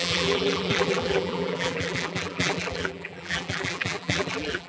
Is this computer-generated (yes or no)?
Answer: yes